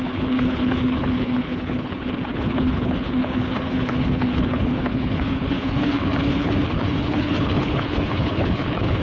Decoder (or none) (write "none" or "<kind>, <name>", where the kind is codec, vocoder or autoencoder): codec, HILCodec